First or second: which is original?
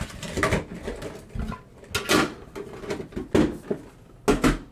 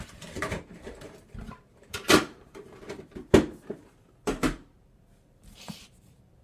first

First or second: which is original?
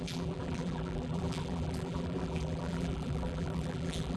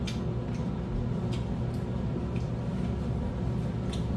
second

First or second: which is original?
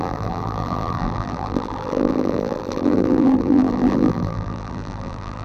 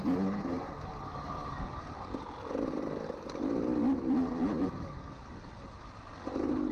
second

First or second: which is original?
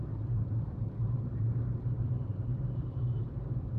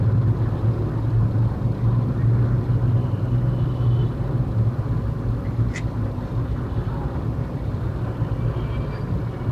second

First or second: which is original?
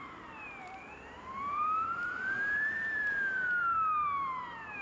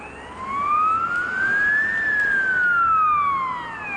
second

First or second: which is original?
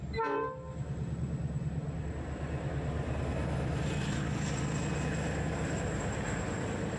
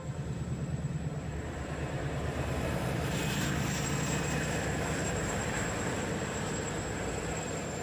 first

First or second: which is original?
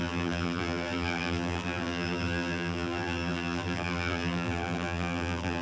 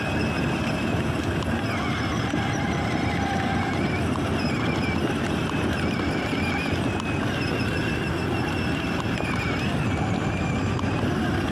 second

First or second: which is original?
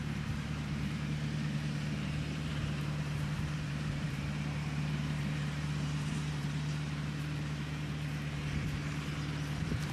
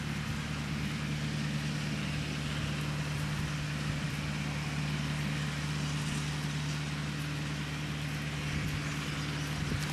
second